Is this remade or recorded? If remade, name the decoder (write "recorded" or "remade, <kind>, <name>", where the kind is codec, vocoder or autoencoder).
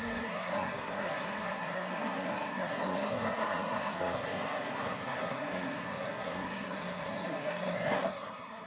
remade, codec, SNAC